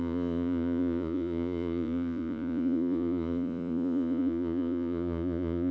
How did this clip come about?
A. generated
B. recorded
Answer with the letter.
A